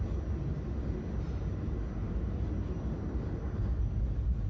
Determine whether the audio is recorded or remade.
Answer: recorded